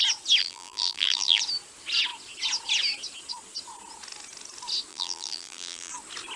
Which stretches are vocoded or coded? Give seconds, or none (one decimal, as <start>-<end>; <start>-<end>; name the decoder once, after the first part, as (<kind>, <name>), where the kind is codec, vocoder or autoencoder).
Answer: 0.4-1.4 (vocoder, BigVGAN v2); 4.9-5.9